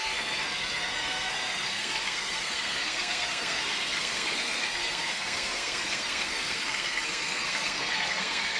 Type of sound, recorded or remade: remade